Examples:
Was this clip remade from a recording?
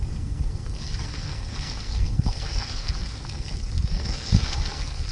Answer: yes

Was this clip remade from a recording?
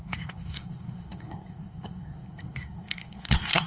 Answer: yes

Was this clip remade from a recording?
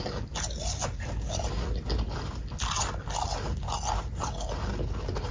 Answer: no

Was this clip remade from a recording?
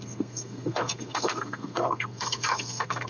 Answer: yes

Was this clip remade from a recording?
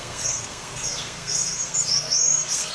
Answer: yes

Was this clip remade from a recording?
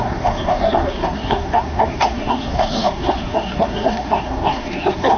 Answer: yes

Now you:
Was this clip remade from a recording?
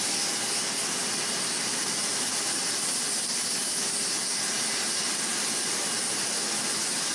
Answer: no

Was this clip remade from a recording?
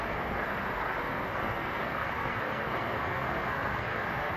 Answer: yes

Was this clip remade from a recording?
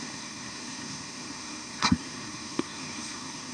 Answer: yes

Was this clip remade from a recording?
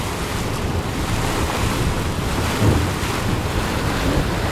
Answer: no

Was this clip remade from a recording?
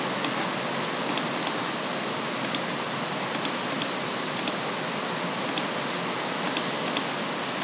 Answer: no